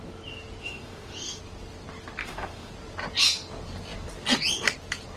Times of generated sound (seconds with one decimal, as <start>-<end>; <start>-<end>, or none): 0.6-1.4; 2.2-2.7